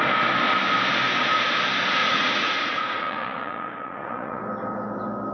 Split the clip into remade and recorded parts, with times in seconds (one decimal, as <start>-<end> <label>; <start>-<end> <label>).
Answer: 0.0-2.0 recorded; 2.0-4.4 remade; 4.4-5.3 recorded